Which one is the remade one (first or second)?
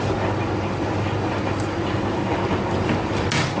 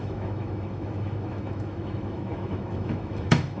second